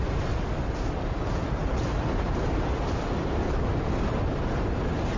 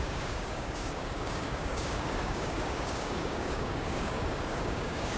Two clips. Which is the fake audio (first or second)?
second